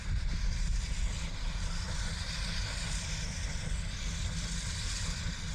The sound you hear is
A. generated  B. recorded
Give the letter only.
B